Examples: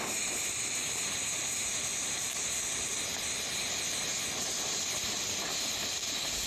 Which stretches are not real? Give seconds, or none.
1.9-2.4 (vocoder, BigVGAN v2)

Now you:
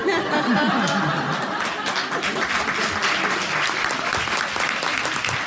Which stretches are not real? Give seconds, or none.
none

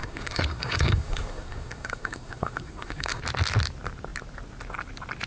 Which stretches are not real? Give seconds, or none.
0.0-3.2 (codec, SNAC)

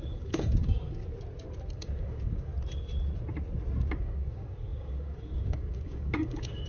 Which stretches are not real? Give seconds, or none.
0.0-1.0 (codec, DAC); 1.7-2.5; 4.0-6.7

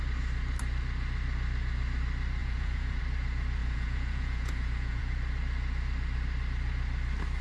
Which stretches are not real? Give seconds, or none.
2.4-3.0 (vocoder, Vocos); 3.6-5.0

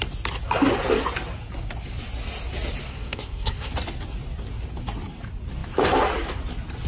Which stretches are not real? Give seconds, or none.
2.9-3.7 (codec, SNAC)